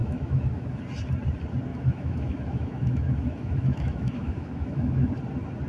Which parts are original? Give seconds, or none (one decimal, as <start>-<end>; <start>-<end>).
0.8-1.7; 5.1-5.7